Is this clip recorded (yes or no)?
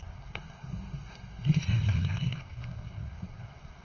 no